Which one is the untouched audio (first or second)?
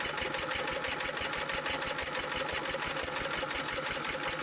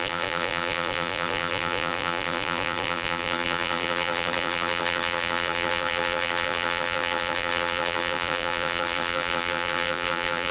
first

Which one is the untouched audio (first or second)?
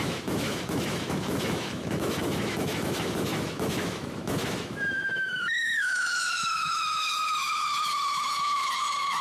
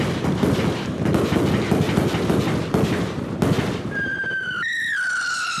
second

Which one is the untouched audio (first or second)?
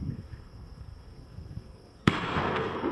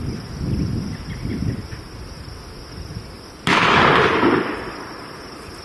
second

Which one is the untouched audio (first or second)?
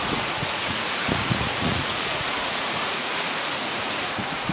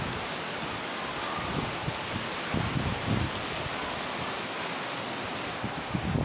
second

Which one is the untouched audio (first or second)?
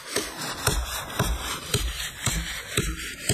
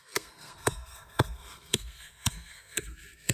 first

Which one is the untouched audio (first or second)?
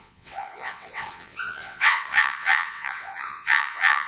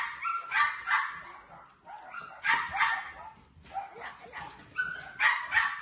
second